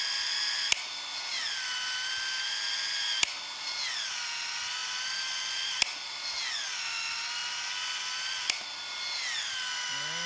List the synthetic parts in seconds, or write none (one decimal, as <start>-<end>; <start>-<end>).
none